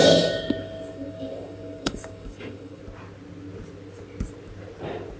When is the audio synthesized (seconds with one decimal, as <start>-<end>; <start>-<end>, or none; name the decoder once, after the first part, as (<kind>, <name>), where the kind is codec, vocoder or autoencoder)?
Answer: 0.0-2.8 (codec, DAC)